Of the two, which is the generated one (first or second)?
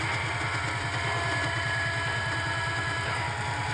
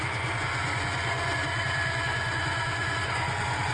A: second